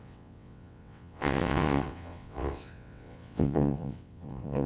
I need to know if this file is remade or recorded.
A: remade